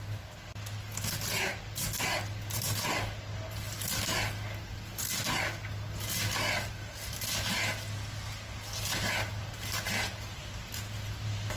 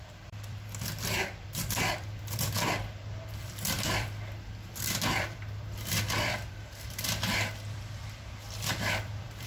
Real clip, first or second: first